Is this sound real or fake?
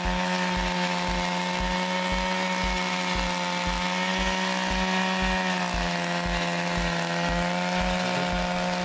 real